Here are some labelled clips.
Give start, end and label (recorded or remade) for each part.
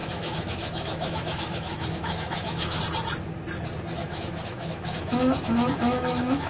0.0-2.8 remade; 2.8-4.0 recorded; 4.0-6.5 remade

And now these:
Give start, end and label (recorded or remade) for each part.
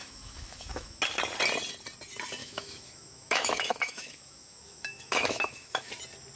0.0-1.0 remade; 1.0-2.4 recorded; 2.4-5.9 remade; 5.9-6.4 recorded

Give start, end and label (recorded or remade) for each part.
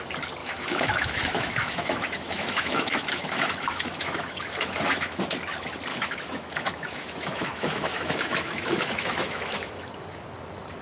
0.0-0.4 recorded; 0.4-5.2 remade; 5.2-5.9 recorded; 5.9-9.9 remade; 9.9-10.8 recorded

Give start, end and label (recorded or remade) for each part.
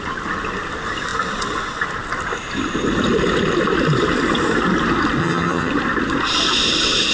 0.0-5.2 recorded; 5.2-5.7 remade; 5.7-7.1 recorded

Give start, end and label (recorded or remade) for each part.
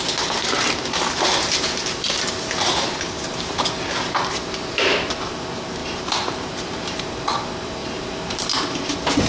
0.0-5.8 recorded; 5.8-7.0 remade; 7.0-7.8 recorded; 7.8-8.3 remade; 8.3-9.3 recorded